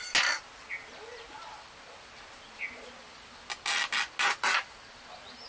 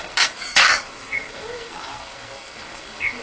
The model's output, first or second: second